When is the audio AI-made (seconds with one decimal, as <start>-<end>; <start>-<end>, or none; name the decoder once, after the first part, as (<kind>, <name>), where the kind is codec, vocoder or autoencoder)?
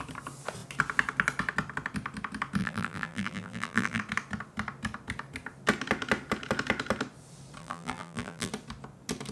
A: 2.6-4.0 (vocoder, BigVGAN v2); 7.6-8.5